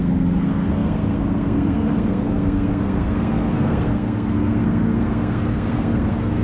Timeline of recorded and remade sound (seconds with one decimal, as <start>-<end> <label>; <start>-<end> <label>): 0.0-6.4 remade